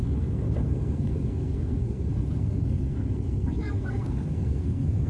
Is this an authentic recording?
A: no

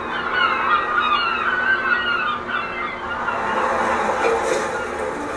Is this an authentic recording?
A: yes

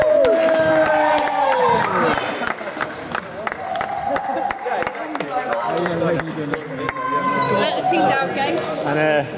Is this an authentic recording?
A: yes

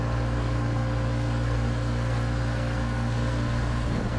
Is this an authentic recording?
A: no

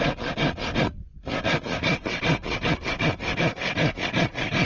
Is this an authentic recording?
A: yes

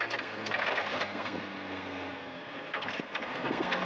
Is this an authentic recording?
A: no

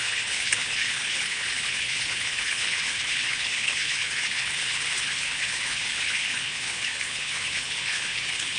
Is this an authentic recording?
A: no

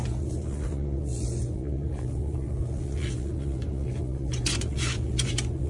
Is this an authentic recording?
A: no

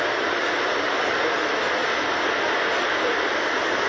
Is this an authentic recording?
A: yes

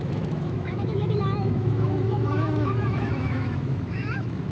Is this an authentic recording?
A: no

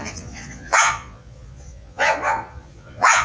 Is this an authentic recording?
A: no